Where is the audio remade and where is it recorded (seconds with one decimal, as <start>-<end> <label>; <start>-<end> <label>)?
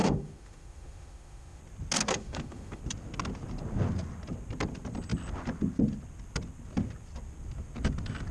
0.0-1.6 remade; 1.6-2.1 recorded; 2.1-2.8 remade; 2.8-8.3 recorded